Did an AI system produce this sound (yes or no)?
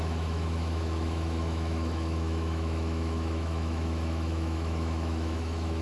yes